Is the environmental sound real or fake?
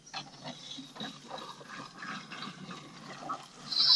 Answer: real